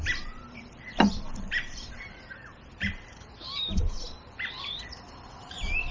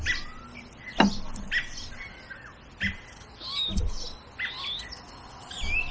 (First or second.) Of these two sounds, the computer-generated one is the first